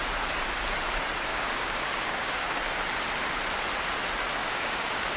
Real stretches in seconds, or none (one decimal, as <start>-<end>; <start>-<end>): 0.0-1.3; 2.6-4.4